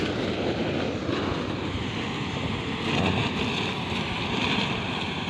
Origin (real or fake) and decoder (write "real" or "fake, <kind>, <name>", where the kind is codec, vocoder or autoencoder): real